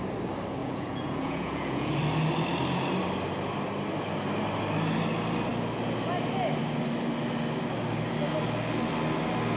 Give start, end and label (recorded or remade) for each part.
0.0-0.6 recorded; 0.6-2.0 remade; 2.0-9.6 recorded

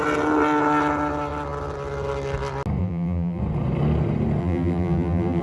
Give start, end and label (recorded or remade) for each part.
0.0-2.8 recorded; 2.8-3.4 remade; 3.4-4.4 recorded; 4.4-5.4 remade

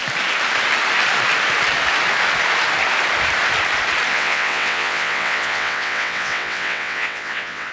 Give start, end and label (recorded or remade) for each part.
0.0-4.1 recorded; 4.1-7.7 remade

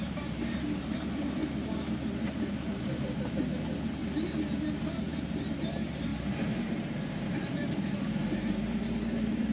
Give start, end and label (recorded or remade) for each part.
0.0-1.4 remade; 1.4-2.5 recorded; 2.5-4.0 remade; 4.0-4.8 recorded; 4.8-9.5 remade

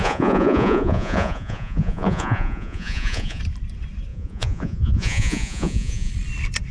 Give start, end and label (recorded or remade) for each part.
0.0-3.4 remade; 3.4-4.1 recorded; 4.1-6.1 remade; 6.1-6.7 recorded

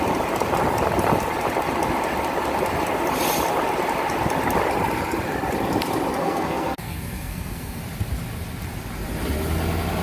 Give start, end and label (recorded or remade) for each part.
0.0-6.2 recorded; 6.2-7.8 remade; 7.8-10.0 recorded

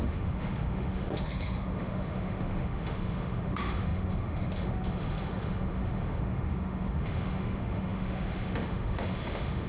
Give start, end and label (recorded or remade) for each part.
0.0-9.7 remade